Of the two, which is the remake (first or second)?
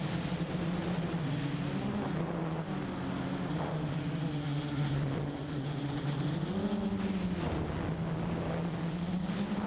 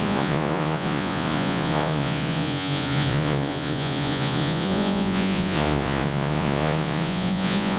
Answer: second